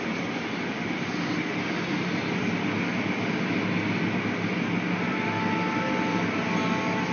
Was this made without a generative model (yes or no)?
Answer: yes